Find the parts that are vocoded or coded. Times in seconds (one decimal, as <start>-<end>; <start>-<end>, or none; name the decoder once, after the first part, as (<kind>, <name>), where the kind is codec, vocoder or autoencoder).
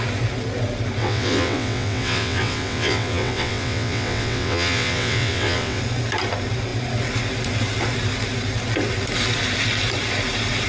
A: 1.0-5.8 (vocoder, WaveNeXt)